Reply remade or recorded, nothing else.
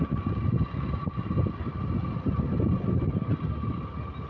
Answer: recorded